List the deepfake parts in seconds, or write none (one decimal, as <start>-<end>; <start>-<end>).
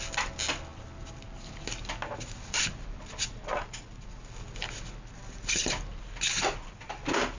none